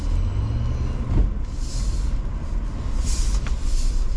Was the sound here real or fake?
real